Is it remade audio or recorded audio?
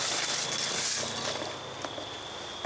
recorded